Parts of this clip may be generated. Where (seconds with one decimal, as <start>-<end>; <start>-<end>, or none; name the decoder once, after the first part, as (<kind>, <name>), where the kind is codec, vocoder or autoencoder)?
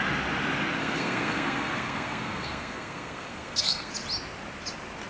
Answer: 0.8-3.9 (codec, SNAC)